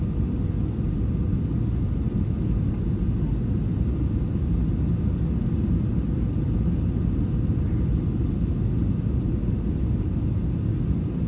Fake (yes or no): no